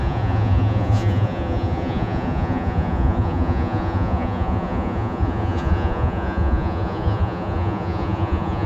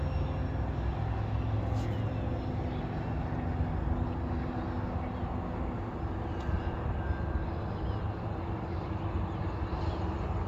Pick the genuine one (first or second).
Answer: second